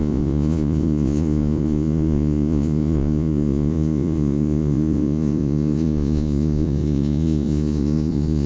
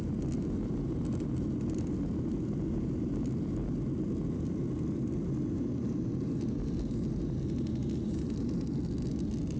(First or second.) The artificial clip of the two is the first